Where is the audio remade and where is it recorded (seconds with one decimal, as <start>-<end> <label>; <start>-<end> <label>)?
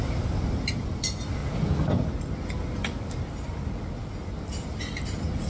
0.0-5.5 recorded